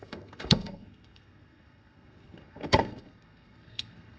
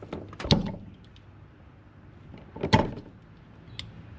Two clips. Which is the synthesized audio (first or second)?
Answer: first